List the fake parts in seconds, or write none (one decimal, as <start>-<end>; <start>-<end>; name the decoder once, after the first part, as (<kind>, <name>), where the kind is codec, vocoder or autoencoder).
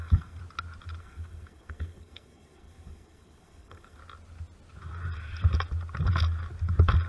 0.0-0.4 (codec, SNAC); 1.0-4.0